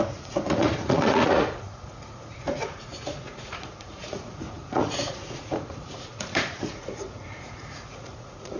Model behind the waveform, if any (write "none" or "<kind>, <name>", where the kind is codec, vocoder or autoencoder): vocoder, Vocos